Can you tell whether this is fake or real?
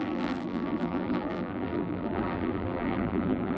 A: fake